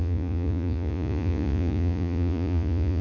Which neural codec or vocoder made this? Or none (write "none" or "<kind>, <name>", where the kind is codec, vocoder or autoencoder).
vocoder, Vocos